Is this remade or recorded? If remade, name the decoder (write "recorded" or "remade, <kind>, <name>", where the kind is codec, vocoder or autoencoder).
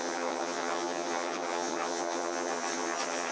remade, vocoder, HiFi-GAN